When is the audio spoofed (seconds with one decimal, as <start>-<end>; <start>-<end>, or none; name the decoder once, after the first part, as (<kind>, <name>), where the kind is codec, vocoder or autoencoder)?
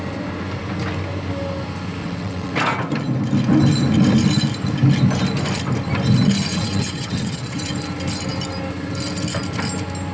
2.0-2.5 (vocoder, WaveNeXt); 6.5-7.7